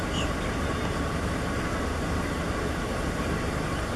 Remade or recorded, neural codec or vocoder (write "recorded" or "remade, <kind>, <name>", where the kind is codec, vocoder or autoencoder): remade, vocoder, BigVGAN v2